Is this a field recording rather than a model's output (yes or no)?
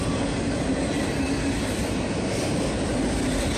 yes